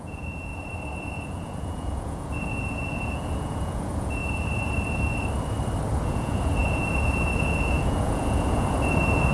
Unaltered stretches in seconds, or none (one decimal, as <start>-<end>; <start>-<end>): 0.5-1.1; 4.2-6.0